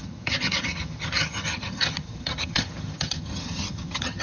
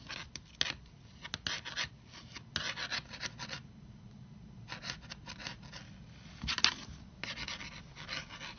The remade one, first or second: first